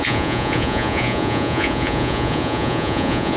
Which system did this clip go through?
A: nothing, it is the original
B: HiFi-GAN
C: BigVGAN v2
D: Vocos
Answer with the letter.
D